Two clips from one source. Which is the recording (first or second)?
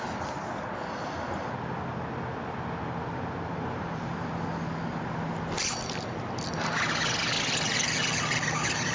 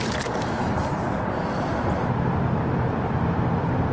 first